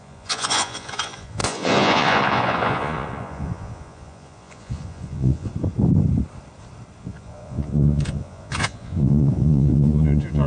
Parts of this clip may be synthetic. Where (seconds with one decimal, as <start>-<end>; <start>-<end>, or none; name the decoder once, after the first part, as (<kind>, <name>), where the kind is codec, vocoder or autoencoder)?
0.0-5.5 (vocoder, Vocos); 7.0-10.5